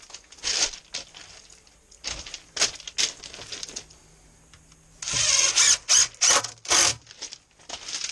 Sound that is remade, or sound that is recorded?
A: recorded